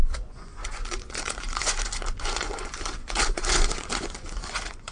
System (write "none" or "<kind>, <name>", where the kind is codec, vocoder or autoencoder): vocoder, Vocos